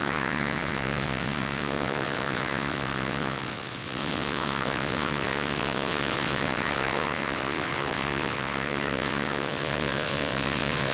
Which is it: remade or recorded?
remade